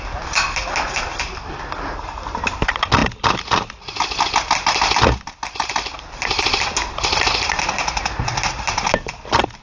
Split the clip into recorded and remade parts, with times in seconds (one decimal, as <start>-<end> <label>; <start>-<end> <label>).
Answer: 0.0-9.6 recorded